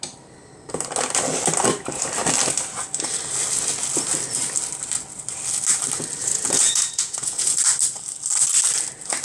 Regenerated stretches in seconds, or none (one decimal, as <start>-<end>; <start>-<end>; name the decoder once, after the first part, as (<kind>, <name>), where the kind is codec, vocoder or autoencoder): 6.2-7.6 (vocoder, Vocos)